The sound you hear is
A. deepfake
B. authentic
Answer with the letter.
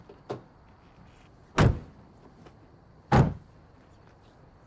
B